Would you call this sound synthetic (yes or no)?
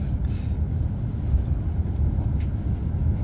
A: no